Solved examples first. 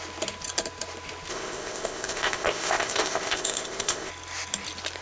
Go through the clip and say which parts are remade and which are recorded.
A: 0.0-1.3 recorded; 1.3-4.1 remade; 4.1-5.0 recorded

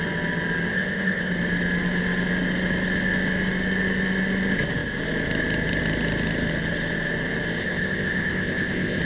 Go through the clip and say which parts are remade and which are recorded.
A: 0.0-0.7 recorded; 0.7-1.3 remade; 1.3-7.6 recorded; 7.6-9.0 remade

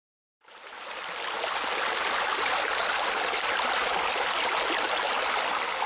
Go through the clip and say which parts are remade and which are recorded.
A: 0.0-5.9 recorded

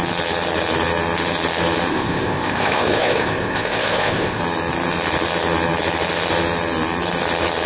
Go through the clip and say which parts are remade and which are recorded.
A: 0.0-1.9 recorded; 1.9-4.4 remade; 4.4-7.7 recorded